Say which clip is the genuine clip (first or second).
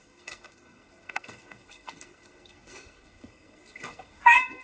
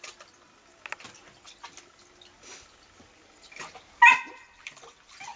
second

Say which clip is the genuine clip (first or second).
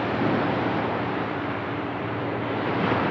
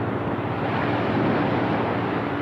second